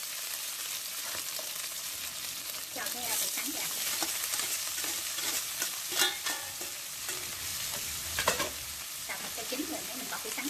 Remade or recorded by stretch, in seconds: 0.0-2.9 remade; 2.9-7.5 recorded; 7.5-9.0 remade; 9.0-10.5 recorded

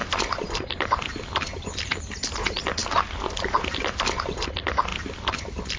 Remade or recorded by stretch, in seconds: 0.0-1.3 remade; 1.3-4.9 recorded; 4.9-5.8 remade

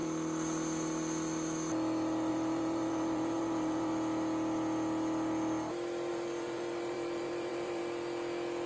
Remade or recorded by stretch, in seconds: 0.0-2.3 recorded; 2.3-3.9 remade; 3.9-6.1 recorded; 6.1-7.8 remade; 7.8-8.7 recorded

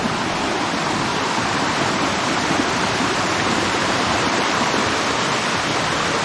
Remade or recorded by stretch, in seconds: 0.0-1.1 recorded; 1.1-4.8 remade; 4.8-6.2 recorded

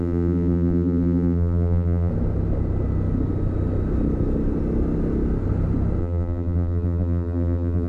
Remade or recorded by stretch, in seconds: 0.0-2.1 remade; 2.1-6.0 recorded; 6.0-7.9 remade

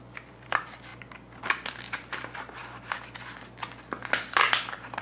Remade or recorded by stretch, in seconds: 0.0-0.9 remade; 0.9-1.4 recorded; 1.4-2.6 remade; 2.6-5.0 recorded